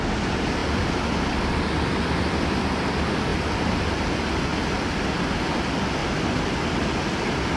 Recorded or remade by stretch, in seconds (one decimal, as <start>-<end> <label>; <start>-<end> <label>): 0.0-7.6 recorded